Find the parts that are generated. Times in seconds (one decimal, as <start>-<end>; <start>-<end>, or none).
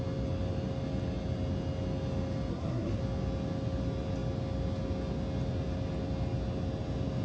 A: 2.5-3.0